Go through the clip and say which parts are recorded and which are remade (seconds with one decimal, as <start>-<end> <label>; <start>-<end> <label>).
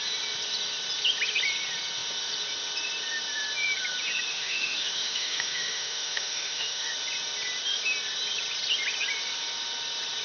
0.0-4.3 recorded; 4.3-6.9 remade; 6.9-10.2 recorded